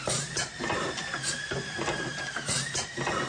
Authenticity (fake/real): fake